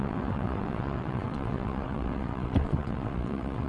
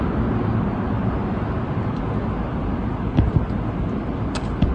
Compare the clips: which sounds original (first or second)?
second